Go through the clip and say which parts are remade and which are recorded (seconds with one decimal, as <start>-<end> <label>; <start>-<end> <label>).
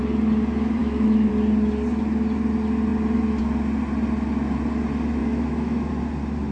0.0-0.8 recorded; 0.8-1.3 remade; 1.3-5.2 recorded; 5.2-5.9 remade; 5.9-6.5 recorded